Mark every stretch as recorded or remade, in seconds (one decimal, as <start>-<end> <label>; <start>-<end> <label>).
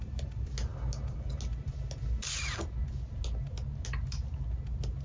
0.0-5.0 recorded